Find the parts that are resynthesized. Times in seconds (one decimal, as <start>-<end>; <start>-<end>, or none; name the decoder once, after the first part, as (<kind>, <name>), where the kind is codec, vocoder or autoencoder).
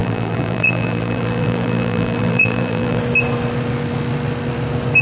0.0-3.0 (vocoder, BigVGAN v2)